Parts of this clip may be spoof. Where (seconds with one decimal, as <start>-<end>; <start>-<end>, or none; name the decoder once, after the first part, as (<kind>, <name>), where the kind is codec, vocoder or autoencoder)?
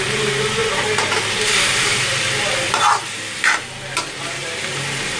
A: none